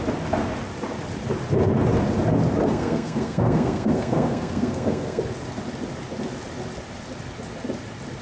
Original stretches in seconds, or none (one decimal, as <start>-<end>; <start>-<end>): 0.0-2.7; 5.2-8.2